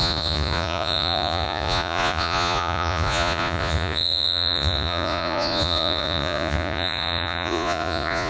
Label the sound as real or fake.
fake